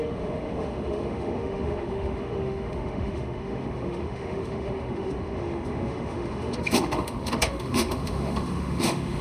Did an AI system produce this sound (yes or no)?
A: yes